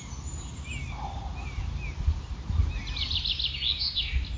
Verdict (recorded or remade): recorded